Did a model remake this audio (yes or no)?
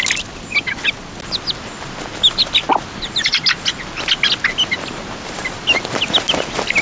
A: no